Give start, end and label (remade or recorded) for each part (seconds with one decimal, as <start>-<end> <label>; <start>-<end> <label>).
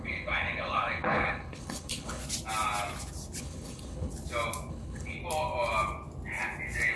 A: 0.0-2.2 remade; 2.2-3.4 recorded; 3.4-4.1 remade; 4.1-4.7 recorded; 4.7-5.2 remade; 5.2-7.0 recorded